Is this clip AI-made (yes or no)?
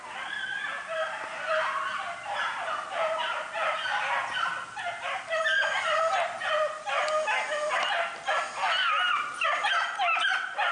no